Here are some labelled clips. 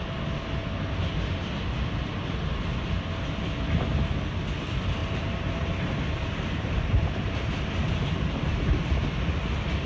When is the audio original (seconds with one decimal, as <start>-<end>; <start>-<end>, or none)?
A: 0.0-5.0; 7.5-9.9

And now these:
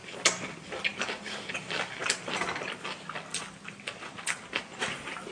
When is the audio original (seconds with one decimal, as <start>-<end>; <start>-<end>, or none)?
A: 0.0-5.3

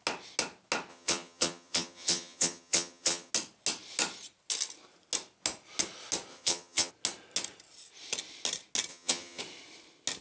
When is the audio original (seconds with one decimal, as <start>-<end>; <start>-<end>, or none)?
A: 0.0-0.9; 3.3-6.3; 6.9-8.9; 9.4-10.2

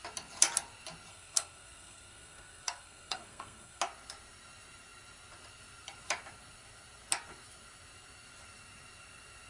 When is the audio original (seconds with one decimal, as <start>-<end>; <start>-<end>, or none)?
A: 0.0-1.1; 3.8-9.5

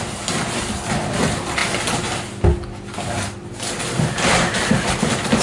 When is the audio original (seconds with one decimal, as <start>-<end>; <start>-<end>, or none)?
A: 0.0-5.4

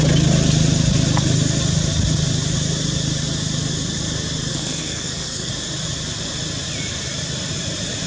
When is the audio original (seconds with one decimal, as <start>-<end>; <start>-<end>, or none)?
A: 0.0-4.5; 5.5-8.1